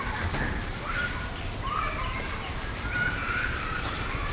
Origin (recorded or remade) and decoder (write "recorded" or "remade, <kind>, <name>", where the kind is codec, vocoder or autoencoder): recorded